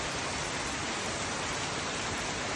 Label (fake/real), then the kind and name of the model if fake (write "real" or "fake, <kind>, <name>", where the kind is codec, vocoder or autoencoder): real